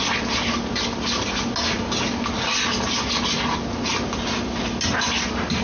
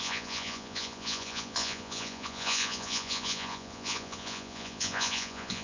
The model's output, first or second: second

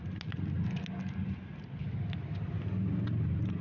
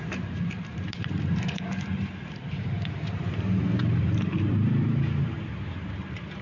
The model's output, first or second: second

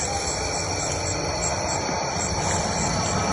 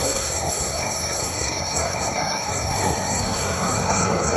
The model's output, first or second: second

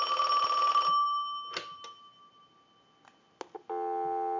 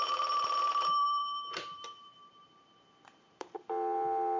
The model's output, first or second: second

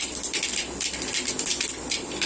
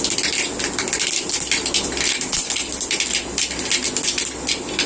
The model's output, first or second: first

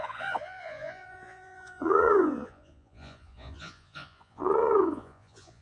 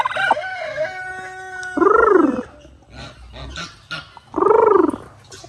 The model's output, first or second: first